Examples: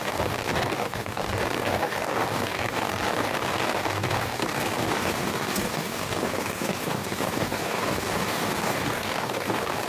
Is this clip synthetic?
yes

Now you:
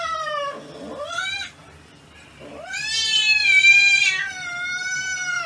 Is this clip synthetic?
yes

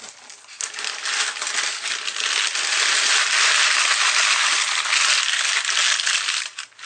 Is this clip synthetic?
no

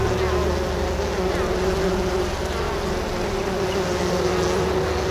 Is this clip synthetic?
no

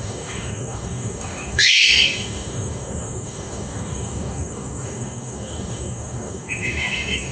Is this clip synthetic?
yes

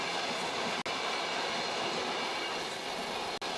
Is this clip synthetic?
no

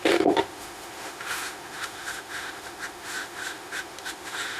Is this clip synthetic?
yes